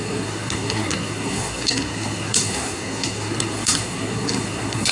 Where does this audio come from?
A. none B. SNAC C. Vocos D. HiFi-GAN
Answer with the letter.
B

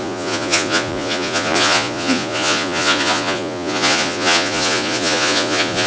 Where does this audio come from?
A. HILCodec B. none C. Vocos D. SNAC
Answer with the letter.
C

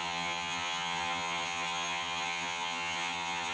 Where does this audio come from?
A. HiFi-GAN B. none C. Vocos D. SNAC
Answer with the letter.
A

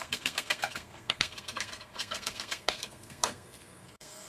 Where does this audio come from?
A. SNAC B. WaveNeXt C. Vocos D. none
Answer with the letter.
A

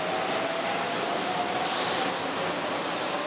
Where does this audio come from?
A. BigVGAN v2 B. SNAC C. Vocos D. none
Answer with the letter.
D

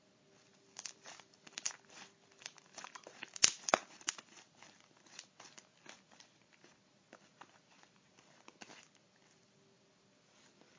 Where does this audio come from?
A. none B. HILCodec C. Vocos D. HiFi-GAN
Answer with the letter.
A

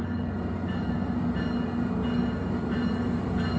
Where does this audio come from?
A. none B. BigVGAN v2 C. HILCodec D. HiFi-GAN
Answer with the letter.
A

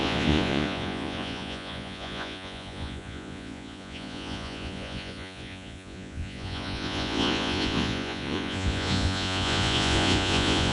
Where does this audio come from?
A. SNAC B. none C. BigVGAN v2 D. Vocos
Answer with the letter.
D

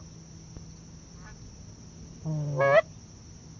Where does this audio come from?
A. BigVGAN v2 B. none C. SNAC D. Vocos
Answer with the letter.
B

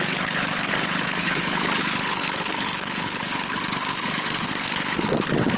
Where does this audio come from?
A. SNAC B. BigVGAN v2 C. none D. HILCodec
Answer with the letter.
D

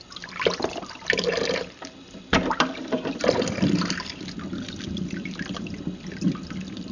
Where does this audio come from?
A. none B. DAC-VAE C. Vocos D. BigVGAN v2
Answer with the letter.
D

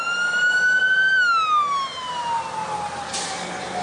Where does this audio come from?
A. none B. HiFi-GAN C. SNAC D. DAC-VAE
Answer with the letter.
A